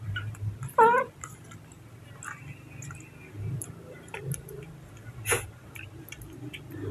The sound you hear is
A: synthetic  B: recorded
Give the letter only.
B